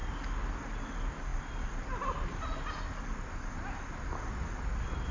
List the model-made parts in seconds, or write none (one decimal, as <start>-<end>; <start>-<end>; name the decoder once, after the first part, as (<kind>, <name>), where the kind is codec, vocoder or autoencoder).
none